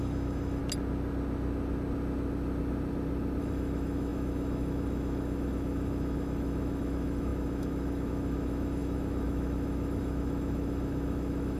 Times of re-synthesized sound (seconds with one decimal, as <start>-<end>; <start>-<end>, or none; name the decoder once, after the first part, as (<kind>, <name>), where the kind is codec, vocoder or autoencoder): 0.0-0.6 (autoencoder, DAC-VAE); 3.4-11.6